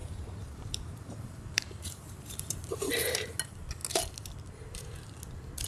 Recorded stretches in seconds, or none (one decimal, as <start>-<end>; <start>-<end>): 3.4-5.7